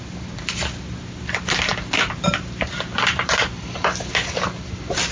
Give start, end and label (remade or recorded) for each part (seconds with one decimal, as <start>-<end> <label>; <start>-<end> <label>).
0.0-5.1 recorded